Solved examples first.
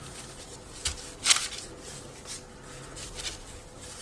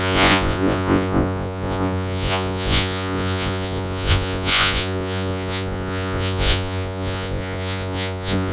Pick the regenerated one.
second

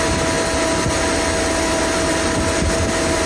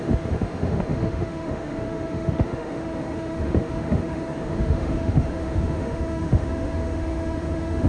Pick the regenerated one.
second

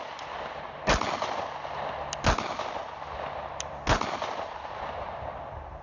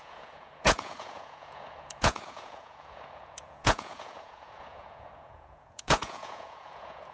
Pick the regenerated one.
second